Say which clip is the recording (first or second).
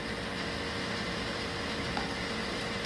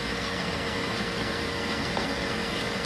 first